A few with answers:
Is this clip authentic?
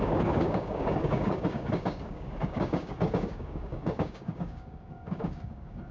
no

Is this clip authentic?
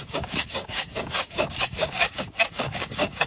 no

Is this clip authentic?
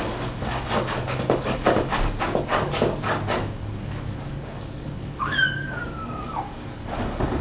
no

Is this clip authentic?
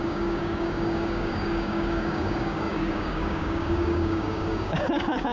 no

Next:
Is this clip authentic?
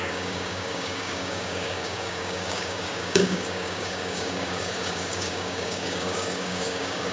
no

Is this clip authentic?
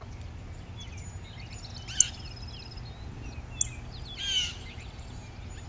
yes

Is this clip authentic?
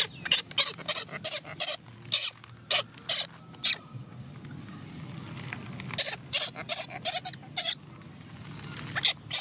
yes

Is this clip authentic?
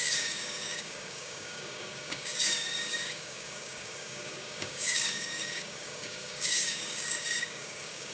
no